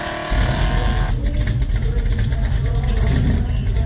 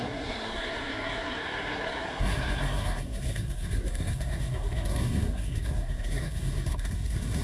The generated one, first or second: second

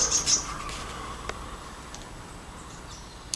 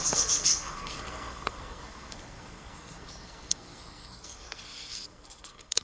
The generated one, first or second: second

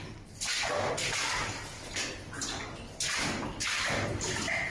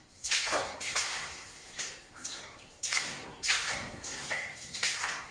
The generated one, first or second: second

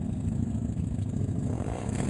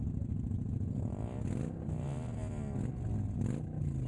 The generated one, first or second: first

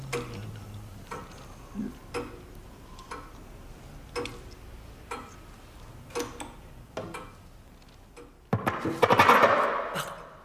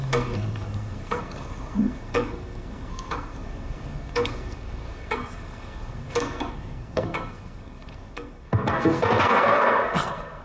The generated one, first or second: second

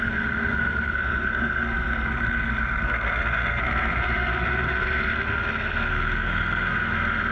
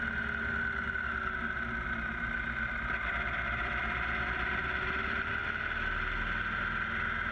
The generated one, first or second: first